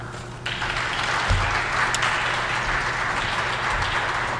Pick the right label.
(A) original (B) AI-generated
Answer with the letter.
A